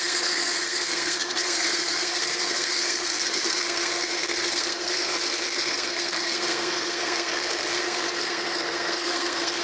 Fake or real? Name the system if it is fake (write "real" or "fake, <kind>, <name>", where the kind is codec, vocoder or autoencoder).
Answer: fake, codec, SNAC